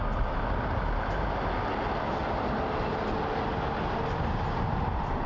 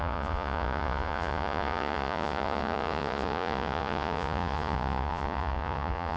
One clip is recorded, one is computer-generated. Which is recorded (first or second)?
first